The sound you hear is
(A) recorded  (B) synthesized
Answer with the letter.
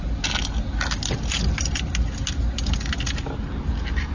A